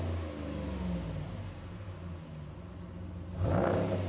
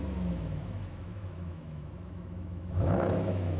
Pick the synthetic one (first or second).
second